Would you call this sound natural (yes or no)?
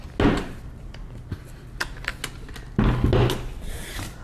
yes